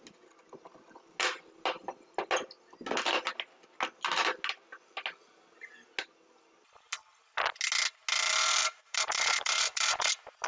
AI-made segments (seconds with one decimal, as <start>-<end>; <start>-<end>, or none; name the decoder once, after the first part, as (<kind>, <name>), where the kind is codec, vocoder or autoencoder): 8.6-10.1 (vocoder, BigVGAN v2)